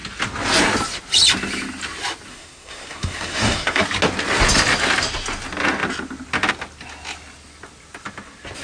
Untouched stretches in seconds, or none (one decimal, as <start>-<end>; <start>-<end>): 0.0-2.3; 3.8-8.6